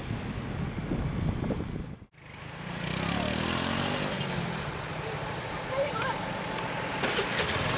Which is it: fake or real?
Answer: real